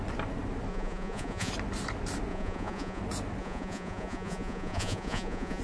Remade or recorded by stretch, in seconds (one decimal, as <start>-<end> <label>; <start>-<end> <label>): 0.0-0.7 recorded; 0.7-1.5 remade; 1.5-2.3 recorded; 2.3-3.0 remade; 3.0-3.4 recorded; 3.4-5.6 remade